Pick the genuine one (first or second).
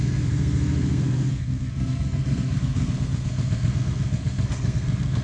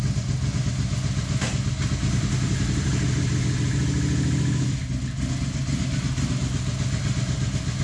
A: second